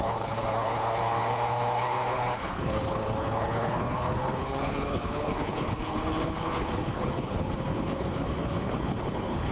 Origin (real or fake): fake